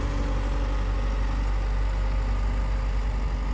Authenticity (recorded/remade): recorded